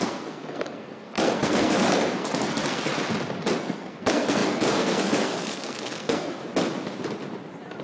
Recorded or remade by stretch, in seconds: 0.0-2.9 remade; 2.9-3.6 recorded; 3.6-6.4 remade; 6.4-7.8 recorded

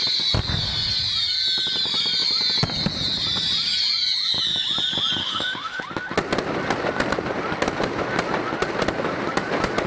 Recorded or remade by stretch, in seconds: 0.0-5.2 recorded; 5.2-5.8 remade; 5.8-9.9 recorded

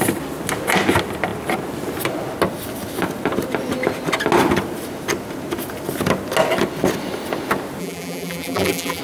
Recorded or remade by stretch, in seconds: 0.0-7.8 recorded; 7.8-9.0 remade

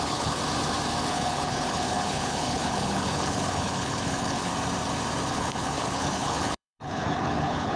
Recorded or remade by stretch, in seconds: 0.0-0.4 remade; 0.4-1.0 recorded; 1.0-4.5 remade; 4.5-5.3 recorded; 5.3-7.8 remade

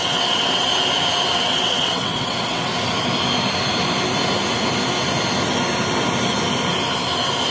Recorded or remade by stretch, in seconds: 0.0-0.7 remade; 0.7-1.4 recorded; 1.4-2.7 remade; 2.7-7.5 recorded